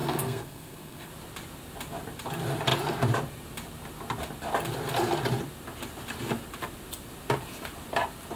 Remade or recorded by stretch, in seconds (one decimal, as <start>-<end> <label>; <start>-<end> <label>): 0.0-1.1 remade; 1.1-8.4 recorded